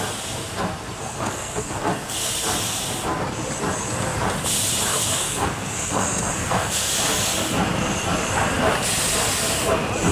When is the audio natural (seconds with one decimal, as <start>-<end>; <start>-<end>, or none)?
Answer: 0.0-1.0; 2.3-4.9; 6.9-10.1